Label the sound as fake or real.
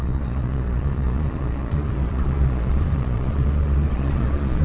fake